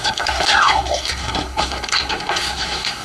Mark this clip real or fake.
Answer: fake